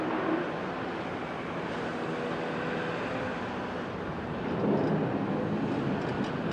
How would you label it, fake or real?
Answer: real